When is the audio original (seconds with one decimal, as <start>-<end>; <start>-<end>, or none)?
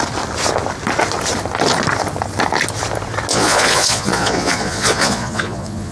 0.0-3.3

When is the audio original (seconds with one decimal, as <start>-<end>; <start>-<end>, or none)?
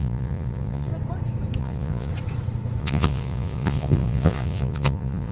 0.9-1.6; 2.1-2.8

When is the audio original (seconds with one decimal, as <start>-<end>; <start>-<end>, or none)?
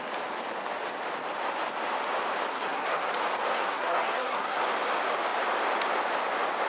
0.0-2.5; 3.1-3.5; 4.6-6.7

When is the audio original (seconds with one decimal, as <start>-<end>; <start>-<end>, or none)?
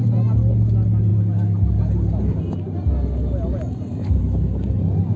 0.0-5.2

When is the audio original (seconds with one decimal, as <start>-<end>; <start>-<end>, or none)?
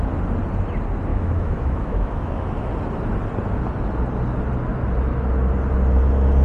0.0-1.1; 2.7-6.4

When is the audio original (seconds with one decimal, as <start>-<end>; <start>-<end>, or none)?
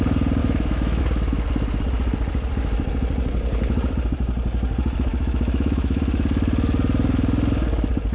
0.0-0.4; 1.0-5.1; 6.0-8.1